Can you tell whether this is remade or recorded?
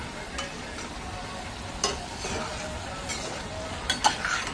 recorded